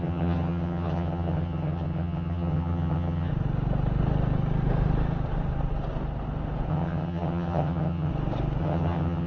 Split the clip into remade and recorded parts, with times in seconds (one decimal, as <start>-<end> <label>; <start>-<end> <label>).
0.0-3.3 remade; 3.3-6.7 recorded; 6.7-8.1 remade; 8.1-8.6 recorded; 8.6-9.3 remade